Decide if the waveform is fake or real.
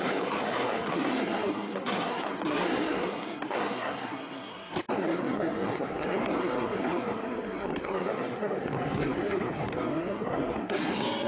fake